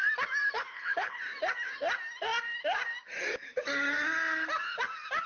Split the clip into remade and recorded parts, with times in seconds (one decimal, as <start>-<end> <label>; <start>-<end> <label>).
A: 0.0-0.7 recorded; 0.7-1.2 remade; 1.2-5.3 recorded